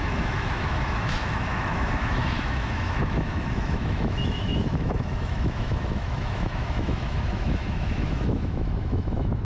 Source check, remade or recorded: remade